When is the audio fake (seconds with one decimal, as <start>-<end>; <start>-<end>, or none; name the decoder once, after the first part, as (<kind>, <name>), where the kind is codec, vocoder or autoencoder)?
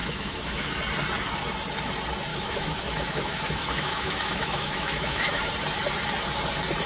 0.0-0.7 (autoencoder, DAC-VAE); 2.3-5.5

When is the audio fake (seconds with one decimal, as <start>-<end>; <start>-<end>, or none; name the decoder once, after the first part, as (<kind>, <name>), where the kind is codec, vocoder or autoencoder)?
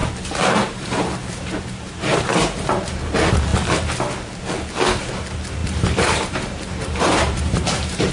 0.0-3.0 (vocoder, BigVGAN v2); 5.6-8.1